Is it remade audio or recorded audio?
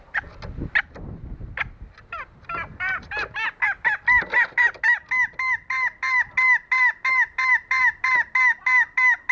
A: recorded